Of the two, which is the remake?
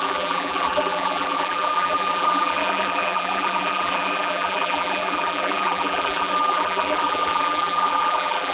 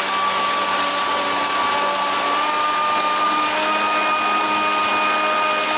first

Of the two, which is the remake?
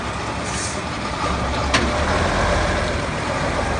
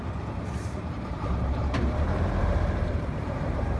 second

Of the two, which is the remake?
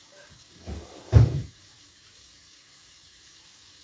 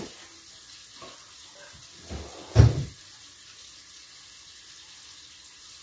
first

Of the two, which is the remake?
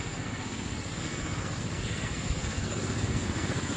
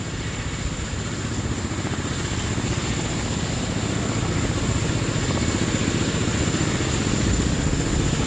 first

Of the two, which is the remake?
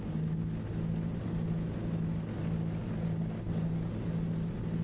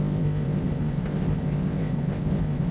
second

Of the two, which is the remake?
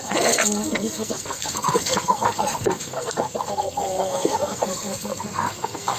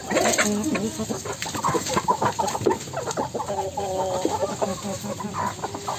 first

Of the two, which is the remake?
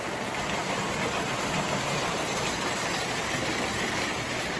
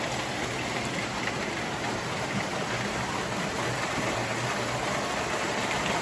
first